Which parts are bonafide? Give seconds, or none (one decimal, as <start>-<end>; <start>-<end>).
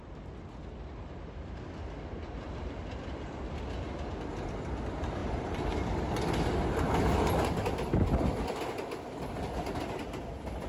0.0-5.2; 6.1-10.7